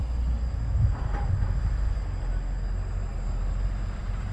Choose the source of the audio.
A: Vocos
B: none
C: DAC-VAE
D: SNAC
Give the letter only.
B